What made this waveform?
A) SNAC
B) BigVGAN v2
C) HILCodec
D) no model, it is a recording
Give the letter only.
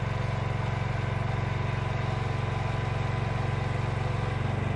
D